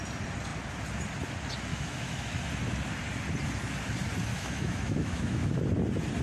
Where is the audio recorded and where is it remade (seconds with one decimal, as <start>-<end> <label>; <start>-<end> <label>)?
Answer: 0.0-1.7 recorded; 1.7-2.4 remade; 2.4-4.3 recorded; 4.3-5.5 remade; 5.5-6.2 recorded